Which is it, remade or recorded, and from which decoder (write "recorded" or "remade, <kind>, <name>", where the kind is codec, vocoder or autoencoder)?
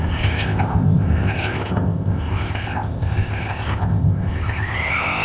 remade, codec, ZipCodec